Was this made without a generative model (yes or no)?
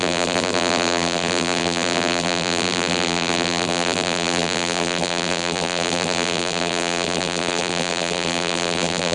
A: no